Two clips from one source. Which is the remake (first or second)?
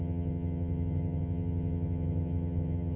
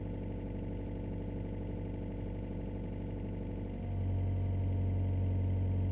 first